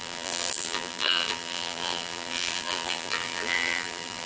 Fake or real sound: fake